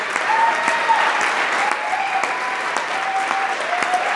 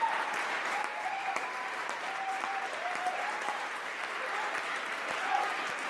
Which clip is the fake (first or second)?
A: second